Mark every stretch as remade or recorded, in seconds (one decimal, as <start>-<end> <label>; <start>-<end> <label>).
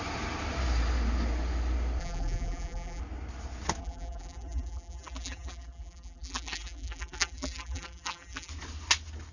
0.0-2.0 recorded; 2.0-3.0 remade; 3.0-3.8 recorded; 3.8-8.5 remade; 8.5-9.3 recorded